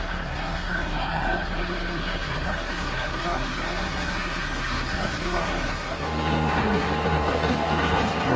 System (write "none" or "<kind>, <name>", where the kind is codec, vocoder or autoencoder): codec, SNAC